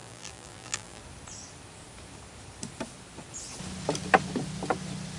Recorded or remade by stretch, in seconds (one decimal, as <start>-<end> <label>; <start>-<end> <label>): 0.0-1.0 remade; 1.0-5.2 recorded